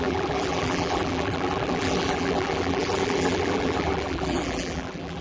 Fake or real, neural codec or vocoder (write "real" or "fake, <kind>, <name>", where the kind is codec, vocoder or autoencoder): fake, vocoder, BigVGAN v2